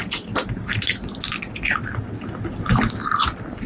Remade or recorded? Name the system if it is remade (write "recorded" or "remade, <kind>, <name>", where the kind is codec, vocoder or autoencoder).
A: recorded